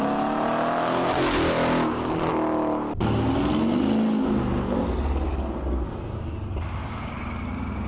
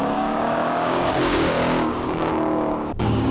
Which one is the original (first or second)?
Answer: first